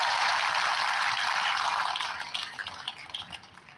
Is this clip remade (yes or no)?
yes